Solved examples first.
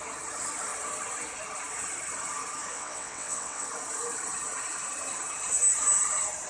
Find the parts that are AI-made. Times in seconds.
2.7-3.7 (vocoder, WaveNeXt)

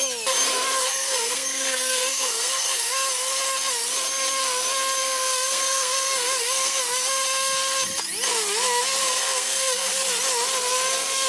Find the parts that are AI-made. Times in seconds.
1.0-2.9 (codec, SNAC); 5.0-6.8; 9.0-9.9

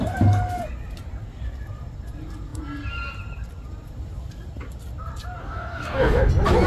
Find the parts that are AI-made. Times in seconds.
5.4-6.3 (codec, DAC)

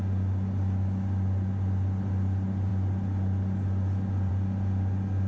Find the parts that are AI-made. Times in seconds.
none

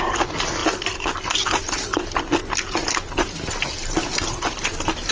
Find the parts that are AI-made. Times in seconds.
0.6-2.2 (vocoder, BigVGAN v2); 2.8-5.1

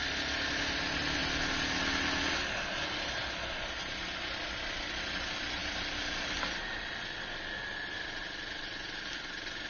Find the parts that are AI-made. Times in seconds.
5.6-8.6 (vocoder, BigVGAN v2)

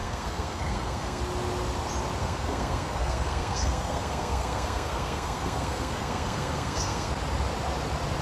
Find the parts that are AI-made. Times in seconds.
0.0-1.2 (codec, SNAC); 2.2-7.1

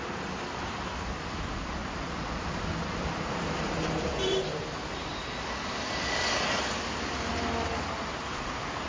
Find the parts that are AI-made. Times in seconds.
0.0-1.8 (vocoder, BigVGAN v2); 2.4-5.1; 7.7-8.9